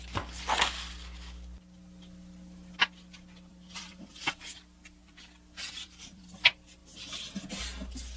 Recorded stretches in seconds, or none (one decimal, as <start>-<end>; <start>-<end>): 0.0-3.5; 4.2-5.0; 6.2-6.8; 7.5-8.2